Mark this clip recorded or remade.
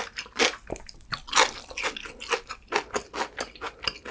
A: recorded